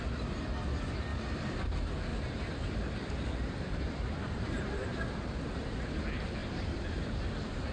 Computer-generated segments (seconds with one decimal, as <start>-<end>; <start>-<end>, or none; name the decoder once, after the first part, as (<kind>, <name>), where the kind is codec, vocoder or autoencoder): 2.1-5.0 (vocoder, BigVGAN v2); 6.4-7.1